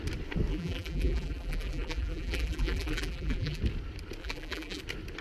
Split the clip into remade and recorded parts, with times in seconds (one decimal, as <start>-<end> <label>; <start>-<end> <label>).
0.0-0.5 recorded; 0.5-3.6 remade; 3.6-4.2 recorded; 4.2-4.8 remade; 4.8-5.2 recorded